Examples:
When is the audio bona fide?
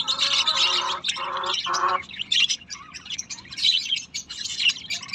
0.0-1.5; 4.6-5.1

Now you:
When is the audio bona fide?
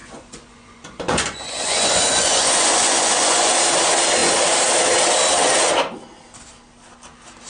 3.5-7.5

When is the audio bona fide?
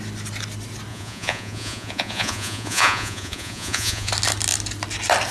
0.0-0.9; 4.1-5.3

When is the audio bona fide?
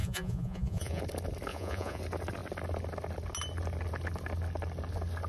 1.0-1.5; 2.0-5.3